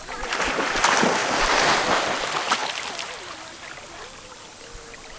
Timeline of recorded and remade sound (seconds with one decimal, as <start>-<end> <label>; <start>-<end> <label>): 0.0-1.2 remade; 1.2-1.9 recorded; 1.9-2.6 remade; 2.6-4.3 recorded; 4.3-5.2 remade